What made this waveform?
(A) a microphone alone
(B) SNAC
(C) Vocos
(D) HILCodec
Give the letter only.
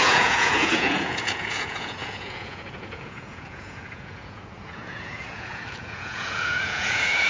C